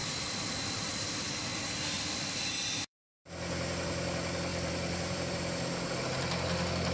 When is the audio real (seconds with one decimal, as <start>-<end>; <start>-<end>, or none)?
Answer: 0.9-1.5; 3.3-4.5; 5.3-6.9

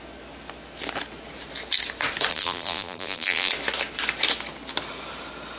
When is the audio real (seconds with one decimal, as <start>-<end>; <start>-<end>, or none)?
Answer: 0.0-2.3; 3.5-5.6

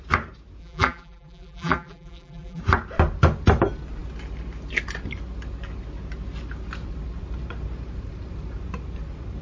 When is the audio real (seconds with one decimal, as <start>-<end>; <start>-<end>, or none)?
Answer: 0.0-0.6; 2.6-9.4

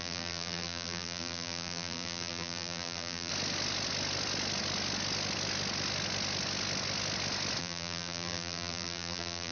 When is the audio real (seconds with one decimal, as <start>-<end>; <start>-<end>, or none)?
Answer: 3.3-7.6

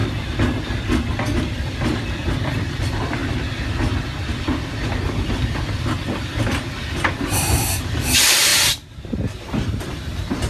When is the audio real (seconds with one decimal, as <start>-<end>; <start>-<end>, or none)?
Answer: 0.0-1.4; 3.2-5.2; 8.5-9.8